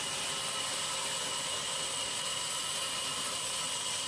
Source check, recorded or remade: recorded